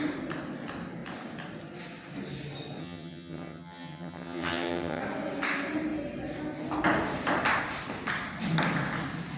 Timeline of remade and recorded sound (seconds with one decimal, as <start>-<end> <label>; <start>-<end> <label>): 0.0-2.8 recorded; 2.8-5.0 remade; 5.0-9.4 recorded